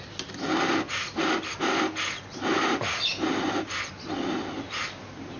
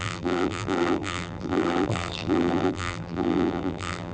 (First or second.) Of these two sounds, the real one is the first